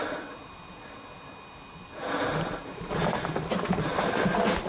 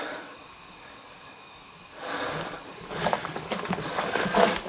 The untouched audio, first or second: first